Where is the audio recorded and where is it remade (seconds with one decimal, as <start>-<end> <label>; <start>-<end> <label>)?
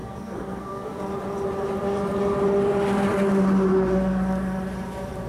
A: 0.0-1.0 remade; 1.0-5.3 recorded